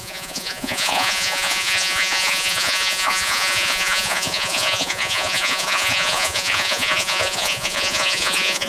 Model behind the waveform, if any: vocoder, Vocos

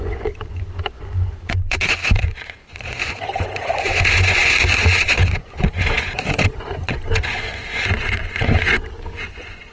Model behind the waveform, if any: vocoder, Vocos